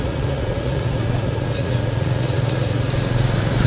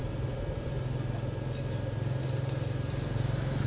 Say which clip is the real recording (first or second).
second